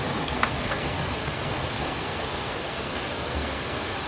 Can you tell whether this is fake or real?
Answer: fake